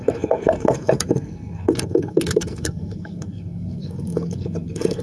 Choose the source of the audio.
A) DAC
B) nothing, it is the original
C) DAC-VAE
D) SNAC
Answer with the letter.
D